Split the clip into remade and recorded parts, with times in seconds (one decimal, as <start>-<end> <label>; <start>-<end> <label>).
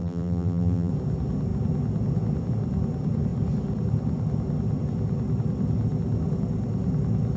0.0-0.9 remade; 0.9-7.4 recorded